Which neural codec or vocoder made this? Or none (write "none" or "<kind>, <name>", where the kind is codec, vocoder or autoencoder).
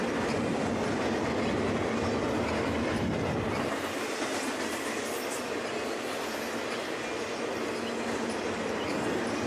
none